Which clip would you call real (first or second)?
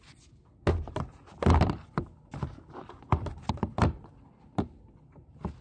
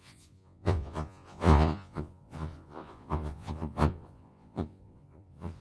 first